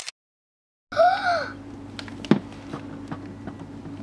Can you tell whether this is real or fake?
real